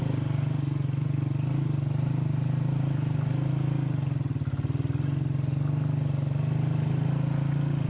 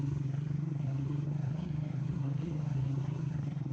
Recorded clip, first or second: first